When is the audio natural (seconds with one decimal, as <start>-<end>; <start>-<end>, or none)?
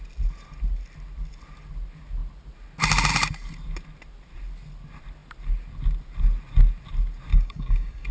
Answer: 0.0-7.3